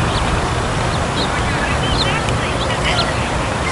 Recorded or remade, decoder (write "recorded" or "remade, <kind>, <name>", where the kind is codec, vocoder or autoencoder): recorded